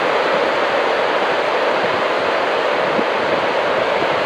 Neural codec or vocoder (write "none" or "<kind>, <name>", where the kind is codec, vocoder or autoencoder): none